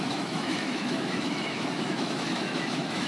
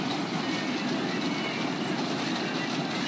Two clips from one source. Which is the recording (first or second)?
second